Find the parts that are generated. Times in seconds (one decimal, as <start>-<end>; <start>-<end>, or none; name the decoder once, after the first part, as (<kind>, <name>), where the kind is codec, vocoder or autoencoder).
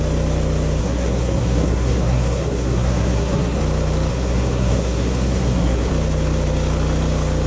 0.8-3.6 (codec, SNAC); 4.1-5.9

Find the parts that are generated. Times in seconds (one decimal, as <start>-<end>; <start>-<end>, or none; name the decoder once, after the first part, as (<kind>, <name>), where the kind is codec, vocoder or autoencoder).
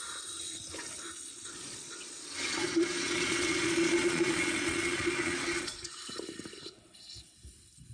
1.3-6.0 (vocoder, Vocos)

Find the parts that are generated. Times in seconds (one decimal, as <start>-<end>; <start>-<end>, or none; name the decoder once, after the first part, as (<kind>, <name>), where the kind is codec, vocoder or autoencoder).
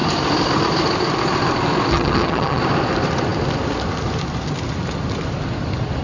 1.9-2.6 (vocoder, HiFi-GAN)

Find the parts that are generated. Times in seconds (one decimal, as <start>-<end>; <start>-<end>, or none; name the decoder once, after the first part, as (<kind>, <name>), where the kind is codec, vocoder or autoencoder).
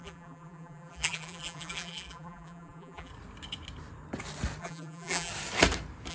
0.0-3.1 (vocoder, BigVGAN v2); 4.6-5.3